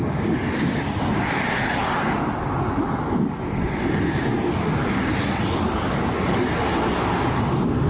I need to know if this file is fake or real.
real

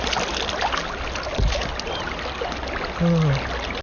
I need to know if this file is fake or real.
real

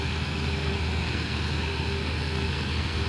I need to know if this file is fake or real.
fake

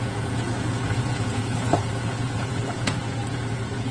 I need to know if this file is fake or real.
fake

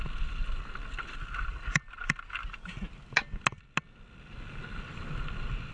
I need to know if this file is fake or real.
real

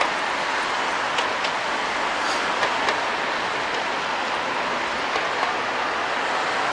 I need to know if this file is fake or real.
real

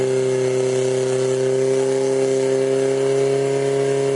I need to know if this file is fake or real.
real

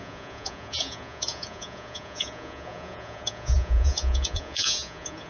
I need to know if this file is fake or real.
fake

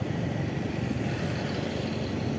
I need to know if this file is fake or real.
real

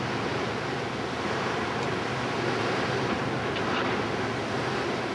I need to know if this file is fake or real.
real